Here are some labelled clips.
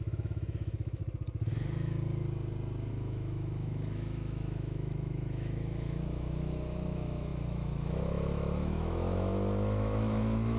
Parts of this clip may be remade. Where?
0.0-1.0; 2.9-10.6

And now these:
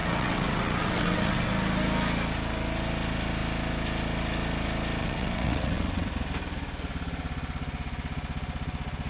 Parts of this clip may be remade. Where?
0.0-1.5; 5.0-6.1

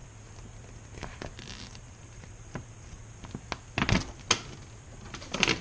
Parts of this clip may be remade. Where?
1.7-3.0

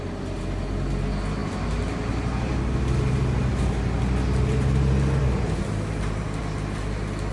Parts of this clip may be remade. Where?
none

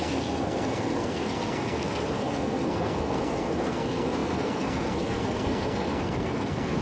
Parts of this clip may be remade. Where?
0.0-6.8

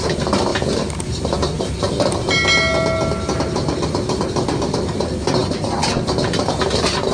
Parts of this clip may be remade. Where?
none

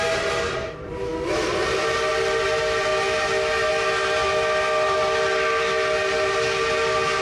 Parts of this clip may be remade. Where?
none